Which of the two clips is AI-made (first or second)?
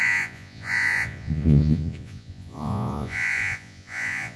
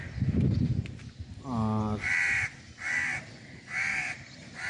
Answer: first